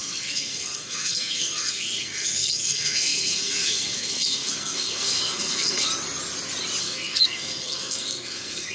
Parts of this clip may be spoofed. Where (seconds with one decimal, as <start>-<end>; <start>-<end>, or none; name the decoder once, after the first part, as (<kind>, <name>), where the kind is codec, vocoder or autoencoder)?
0.0-5.9 (codec, SNAC); 6.8-8.7